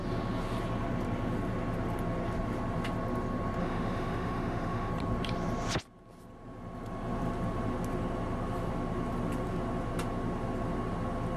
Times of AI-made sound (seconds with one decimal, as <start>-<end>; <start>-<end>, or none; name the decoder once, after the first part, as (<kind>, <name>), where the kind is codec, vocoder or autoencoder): 3.6-4.9 (autoencoder, DAC-VAE)